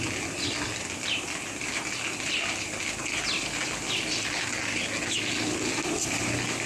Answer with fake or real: real